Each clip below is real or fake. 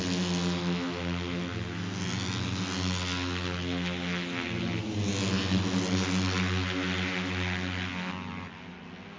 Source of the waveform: real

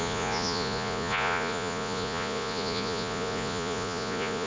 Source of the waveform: fake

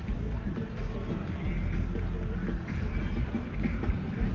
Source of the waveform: real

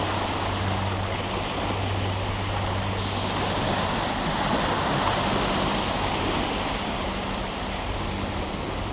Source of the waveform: real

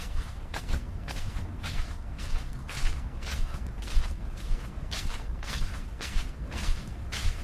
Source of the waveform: fake